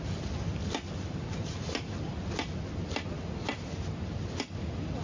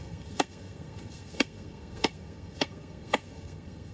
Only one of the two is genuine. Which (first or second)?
first